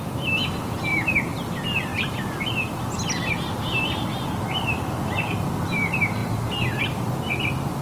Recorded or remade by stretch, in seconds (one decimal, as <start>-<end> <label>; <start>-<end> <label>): 0.0-7.8 recorded